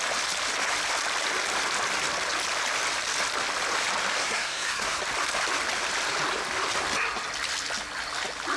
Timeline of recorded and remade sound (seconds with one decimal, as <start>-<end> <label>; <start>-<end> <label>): 0.0-4.2 recorded; 4.2-5.0 remade; 5.0-8.6 recorded